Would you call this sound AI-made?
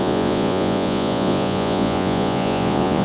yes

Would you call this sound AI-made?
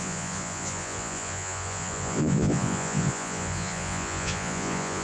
yes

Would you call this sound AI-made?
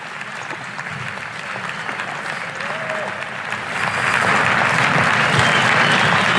no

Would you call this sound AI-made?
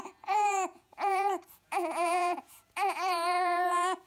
yes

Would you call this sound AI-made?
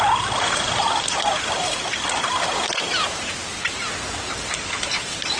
no